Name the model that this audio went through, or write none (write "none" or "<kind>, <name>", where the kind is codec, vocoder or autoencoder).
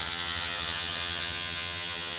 vocoder, HiFi-GAN